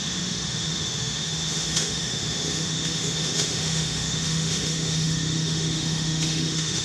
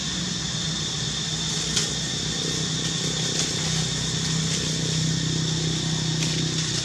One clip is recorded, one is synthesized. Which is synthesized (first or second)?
first